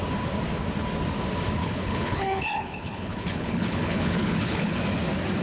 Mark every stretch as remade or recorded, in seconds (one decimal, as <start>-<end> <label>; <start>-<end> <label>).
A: 0.0-1.6 recorded; 1.6-4.8 remade; 4.8-5.4 recorded